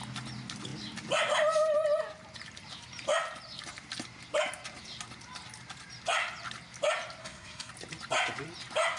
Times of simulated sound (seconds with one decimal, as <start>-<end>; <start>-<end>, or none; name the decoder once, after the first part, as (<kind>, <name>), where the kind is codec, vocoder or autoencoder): 7.2-7.7 (codec, SNAC)

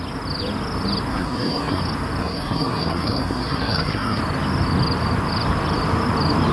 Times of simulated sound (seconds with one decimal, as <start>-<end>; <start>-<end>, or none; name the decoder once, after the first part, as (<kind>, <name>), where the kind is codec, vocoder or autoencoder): 1.1-1.8 (codec, SNAC); 2.2-4.2

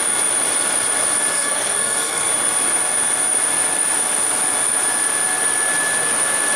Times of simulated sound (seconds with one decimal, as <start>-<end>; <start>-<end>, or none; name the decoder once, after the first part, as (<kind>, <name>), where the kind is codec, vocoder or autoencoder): 1.3-2.3 (codec, SNAC)

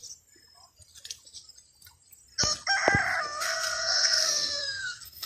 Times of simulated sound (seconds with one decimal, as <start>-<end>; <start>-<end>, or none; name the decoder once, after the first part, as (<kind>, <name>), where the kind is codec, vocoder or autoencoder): 3.2-5.3 (codec, SNAC)

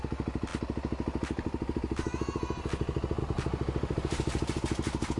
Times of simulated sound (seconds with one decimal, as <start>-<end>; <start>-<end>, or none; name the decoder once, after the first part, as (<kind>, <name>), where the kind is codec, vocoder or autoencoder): none